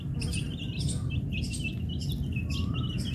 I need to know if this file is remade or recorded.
recorded